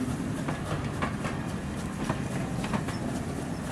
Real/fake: real